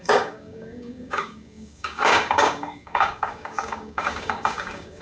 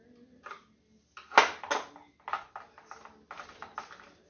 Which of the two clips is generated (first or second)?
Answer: first